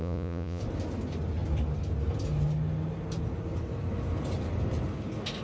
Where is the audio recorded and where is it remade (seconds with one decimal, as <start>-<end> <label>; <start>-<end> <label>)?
0.0-0.6 remade; 0.6-5.4 recorded